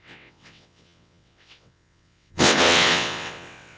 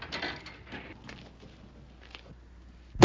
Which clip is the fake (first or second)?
first